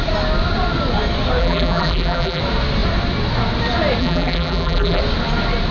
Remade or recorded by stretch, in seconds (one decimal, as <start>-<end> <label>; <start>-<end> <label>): 0.0-1.4 recorded; 1.4-2.4 remade; 2.4-4.0 recorded; 4.0-5.0 remade; 5.0-5.7 recorded